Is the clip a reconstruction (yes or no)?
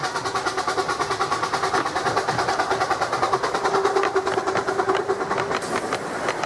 no